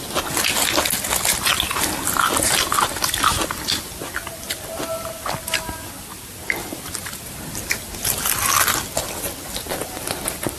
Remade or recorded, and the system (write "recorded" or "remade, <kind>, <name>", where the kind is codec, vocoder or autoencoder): recorded